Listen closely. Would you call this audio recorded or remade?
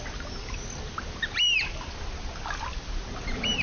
recorded